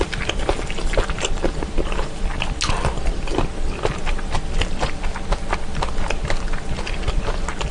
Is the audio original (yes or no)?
yes